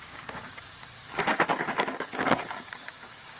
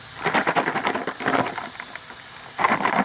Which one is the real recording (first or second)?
second